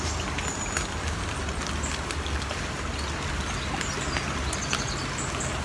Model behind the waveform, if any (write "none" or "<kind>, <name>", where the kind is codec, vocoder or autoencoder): none